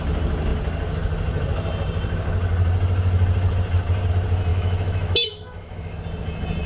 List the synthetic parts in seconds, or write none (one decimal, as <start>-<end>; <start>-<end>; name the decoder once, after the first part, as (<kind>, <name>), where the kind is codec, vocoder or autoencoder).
4.5-6.0 (autoencoder, DAC-VAE)